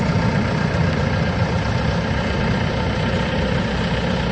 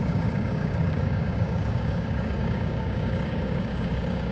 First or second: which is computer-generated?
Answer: second